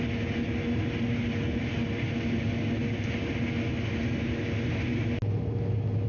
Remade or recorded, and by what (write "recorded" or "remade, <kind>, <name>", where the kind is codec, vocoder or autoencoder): recorded